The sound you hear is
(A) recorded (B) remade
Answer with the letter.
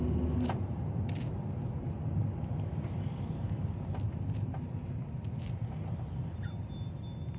A